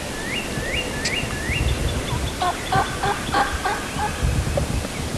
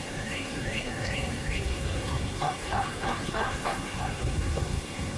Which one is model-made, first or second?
second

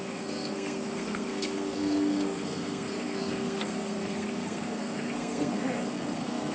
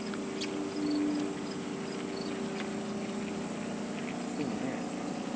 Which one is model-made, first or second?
first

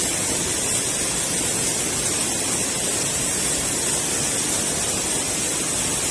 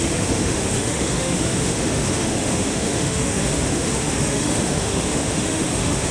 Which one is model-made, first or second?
second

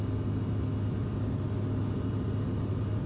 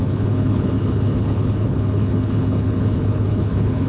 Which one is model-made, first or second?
second